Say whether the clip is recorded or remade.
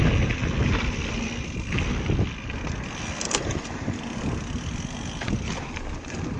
recorded